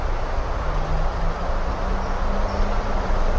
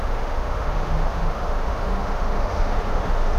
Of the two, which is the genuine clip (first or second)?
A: first